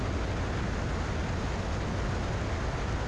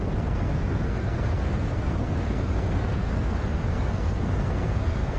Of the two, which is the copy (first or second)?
second